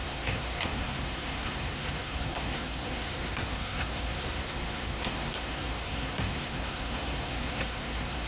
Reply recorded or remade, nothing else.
remade